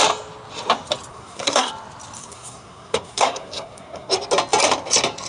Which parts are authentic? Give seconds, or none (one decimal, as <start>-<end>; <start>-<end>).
0.0-1.1; 1.7-2.2; 4.1-5.3